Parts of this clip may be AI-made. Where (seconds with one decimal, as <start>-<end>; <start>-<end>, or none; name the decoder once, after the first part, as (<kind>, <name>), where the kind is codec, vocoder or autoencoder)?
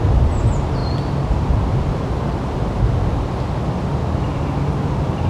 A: none